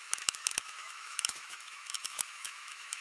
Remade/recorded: remade